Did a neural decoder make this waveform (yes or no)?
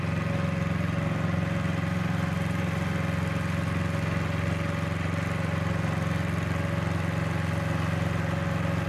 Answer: no